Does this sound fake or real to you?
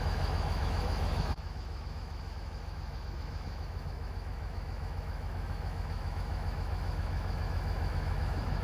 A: fake